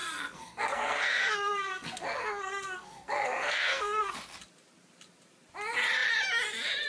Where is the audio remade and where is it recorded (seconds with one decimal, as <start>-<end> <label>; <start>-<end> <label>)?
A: 0.0-4.1 remade; 4.1-6.9 recorded